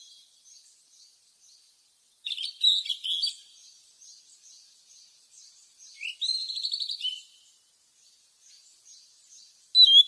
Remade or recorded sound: recorded